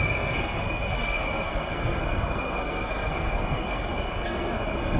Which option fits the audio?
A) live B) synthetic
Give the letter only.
B